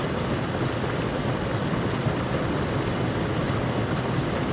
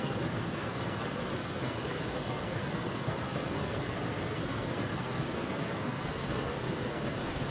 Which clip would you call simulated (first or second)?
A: second